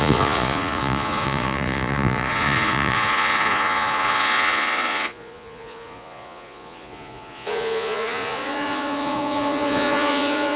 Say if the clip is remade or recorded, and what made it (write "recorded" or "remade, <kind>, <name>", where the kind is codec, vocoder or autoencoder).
remade, vocoder, Vocos